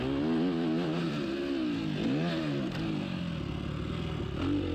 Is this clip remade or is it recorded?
recorded